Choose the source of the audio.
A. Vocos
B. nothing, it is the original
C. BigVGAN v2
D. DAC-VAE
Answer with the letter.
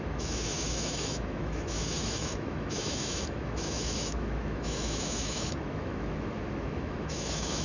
D